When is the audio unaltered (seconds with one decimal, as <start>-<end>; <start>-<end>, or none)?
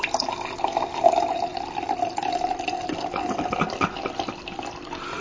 0.0-5.2